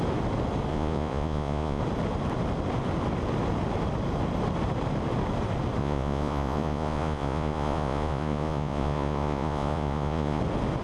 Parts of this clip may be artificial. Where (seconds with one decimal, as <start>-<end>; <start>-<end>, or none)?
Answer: 0.7-1.8; 5.8-10.4